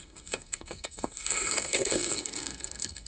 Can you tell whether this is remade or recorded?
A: remade